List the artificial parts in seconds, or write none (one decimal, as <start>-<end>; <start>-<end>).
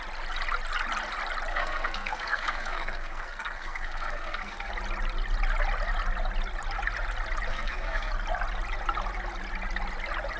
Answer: 1.5-4.7; 7.5-8.1